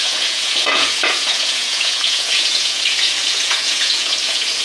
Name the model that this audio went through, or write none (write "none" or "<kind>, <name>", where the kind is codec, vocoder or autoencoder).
vocoder, Vocos